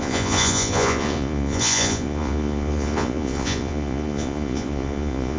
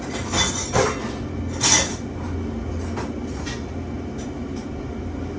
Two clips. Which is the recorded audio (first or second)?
second